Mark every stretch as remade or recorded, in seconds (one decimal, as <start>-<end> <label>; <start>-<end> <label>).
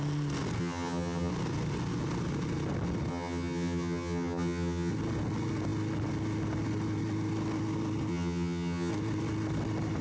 0.0-0.6 recorded; 0.6-1.3 remade; 1.3-3.1 recorded; 3.1-4.9 remade; 4.9-8.1 recorded; 8.1-8.9 remade; 8.9-10.0 recorded